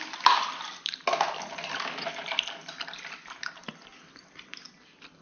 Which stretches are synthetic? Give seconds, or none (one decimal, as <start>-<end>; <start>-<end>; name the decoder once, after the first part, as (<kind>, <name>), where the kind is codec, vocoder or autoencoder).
none